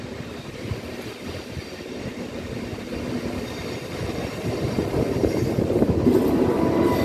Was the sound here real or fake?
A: real